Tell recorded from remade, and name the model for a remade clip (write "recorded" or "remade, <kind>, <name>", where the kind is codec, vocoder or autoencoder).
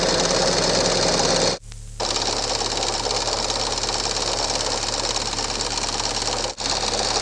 recorded